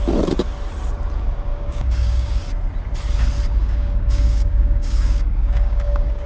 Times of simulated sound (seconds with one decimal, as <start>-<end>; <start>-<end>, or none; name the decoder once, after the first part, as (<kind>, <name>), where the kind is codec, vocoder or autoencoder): 1.5-2.4 (codec, DAC); 3.6-6.3